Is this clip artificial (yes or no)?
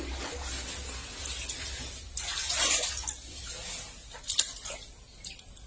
no